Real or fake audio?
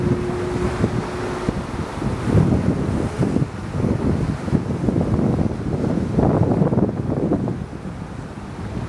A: real